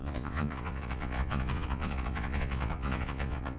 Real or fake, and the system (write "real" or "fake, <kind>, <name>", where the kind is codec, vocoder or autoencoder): fake, vocoder, Vocos